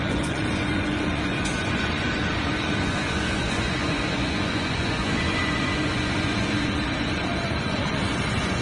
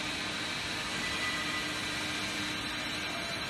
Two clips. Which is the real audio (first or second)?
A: second